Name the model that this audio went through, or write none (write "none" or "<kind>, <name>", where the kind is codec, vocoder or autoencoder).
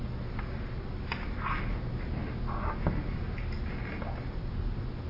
none